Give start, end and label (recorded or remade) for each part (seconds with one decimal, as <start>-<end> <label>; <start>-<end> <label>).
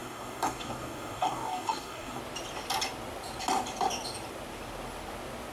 0.0-2.2 remade; 2.2-5.5 recorded